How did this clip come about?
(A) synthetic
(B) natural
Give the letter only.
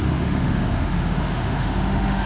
A